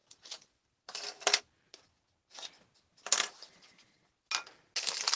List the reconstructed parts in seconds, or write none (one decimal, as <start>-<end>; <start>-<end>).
0.0-1.4